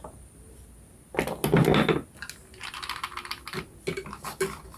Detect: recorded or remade recorded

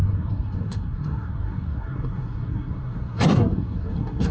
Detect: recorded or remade remade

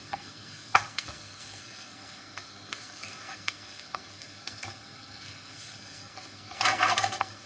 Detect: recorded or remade remade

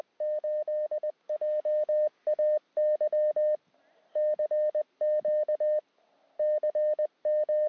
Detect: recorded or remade recorded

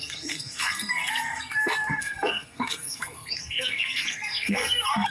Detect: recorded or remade remade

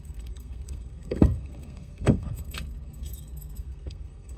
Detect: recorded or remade remade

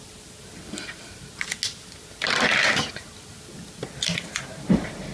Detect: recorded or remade recorded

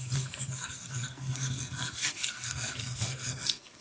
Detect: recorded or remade remade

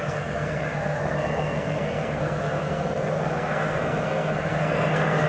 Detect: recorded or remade remade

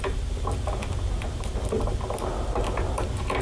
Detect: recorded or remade recorded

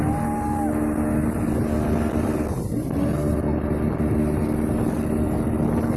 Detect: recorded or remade recorded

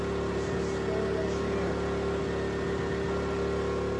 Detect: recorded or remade recorded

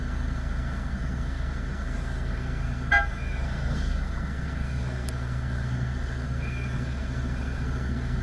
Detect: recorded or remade remade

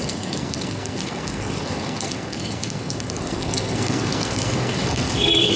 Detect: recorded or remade remade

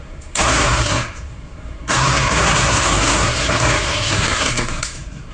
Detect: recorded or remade remade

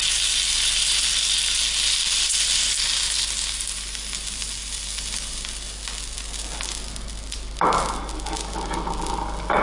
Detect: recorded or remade recorded